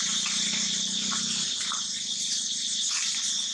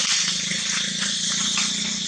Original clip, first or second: second